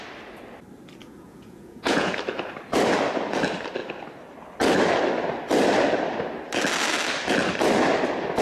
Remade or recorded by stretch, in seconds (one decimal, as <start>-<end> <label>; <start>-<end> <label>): 0.0-1.0 recorded; 1.0-2.2 remade; 2.2-8.4 recorded